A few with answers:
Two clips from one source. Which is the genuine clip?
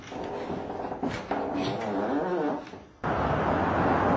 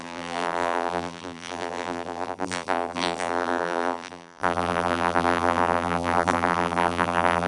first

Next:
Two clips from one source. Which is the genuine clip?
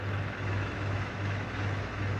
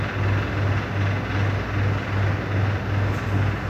second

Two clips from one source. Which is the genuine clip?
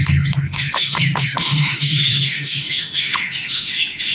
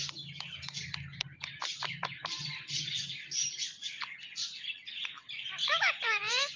second